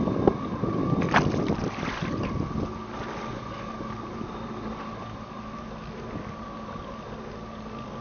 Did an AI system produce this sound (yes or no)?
no